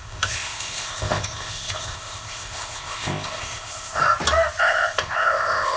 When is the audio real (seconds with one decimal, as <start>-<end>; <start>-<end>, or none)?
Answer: 4.0-4.6

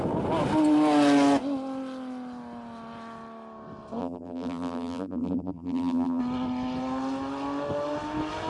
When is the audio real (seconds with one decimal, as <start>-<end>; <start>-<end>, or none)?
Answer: 0.0-4.0; 6.2-8.5

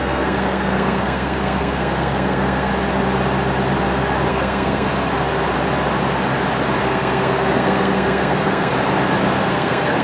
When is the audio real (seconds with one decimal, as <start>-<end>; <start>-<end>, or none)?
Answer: 2.7-4.3; 4.9-6.8; 8.7-9.5

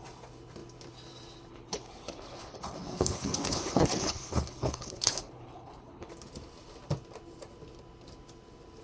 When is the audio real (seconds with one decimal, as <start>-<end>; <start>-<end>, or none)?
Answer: 0.0-1.5; 6.1-8.8

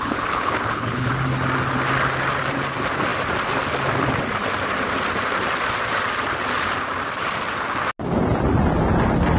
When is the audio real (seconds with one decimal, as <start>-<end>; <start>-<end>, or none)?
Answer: 1.1-9.4

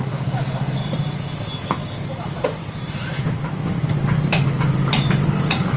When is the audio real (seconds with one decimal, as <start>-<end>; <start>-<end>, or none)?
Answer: 0.8-1.6; 2.6-5.2